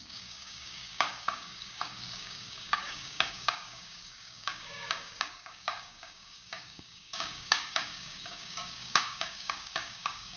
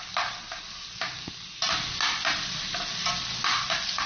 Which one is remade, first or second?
first